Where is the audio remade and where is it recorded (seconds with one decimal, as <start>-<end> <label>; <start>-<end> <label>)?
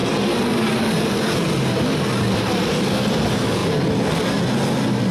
0.0-5.1 recorded